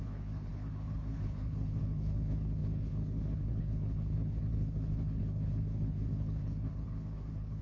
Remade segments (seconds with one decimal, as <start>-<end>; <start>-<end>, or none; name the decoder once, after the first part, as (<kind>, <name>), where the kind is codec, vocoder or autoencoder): 0.0-7.6 (codec, HILCodec)